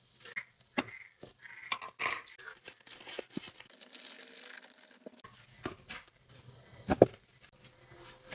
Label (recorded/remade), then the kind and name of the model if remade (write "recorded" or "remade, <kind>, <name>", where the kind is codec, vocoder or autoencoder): recorded